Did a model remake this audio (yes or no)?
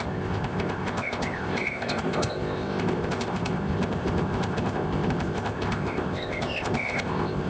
yes